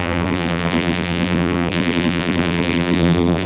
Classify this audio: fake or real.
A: fake